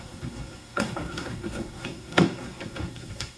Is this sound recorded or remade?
remade